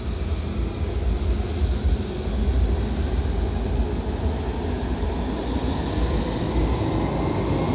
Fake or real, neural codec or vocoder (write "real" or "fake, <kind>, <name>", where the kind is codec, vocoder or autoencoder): real